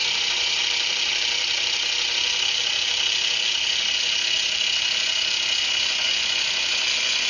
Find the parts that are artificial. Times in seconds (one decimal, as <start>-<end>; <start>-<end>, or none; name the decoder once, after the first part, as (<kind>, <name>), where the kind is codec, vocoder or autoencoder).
0.0-0.6 (vocoder, Vocos); 5.6-7.3

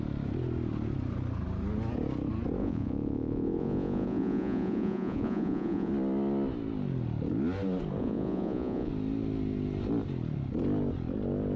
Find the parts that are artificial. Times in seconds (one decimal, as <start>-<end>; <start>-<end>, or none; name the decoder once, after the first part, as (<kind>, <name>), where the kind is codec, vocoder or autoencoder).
2.6-5.9 (vocoder, Vocos); 8.0-8.9

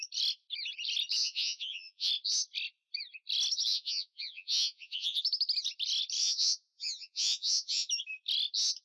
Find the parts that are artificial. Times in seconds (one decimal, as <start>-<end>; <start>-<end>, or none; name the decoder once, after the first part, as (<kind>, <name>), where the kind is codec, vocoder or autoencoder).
1.2-2.1 (vocoder, Vocos); 3.7-5.2; 6.2-7.9

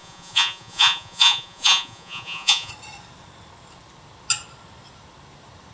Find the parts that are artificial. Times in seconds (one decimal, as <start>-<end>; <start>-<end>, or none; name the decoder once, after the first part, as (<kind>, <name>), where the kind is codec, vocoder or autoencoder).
0.0-2.7 (vocoder, Vocos)

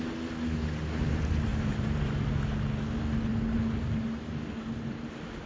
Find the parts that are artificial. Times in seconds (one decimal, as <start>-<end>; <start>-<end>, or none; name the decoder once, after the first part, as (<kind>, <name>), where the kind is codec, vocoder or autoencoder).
1.5-2.3 (vocoder, BigVGAN v2)

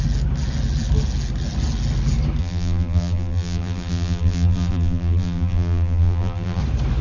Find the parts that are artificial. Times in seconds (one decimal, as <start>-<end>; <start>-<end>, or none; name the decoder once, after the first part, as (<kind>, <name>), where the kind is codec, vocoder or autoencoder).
2.4-6.6 (vocoder, BigVGAN v2)

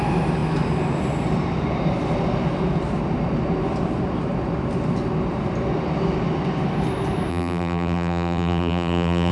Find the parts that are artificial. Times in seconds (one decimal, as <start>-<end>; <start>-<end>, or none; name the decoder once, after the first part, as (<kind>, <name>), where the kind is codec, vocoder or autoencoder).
7.3-9.3 (vocoder, BigVGAN v2)